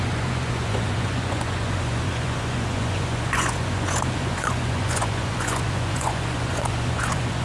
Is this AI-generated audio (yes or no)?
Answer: yes